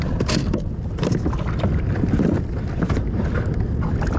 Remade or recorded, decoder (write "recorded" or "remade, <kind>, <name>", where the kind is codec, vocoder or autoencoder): remade, vocoder, BigVGAN v2